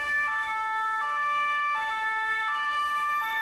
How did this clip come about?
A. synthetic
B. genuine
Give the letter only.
A